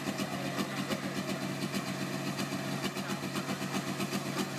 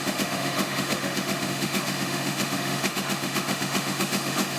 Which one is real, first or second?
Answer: first